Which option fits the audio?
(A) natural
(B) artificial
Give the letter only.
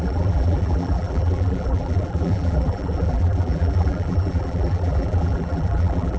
B